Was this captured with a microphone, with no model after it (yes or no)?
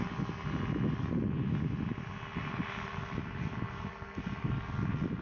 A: yes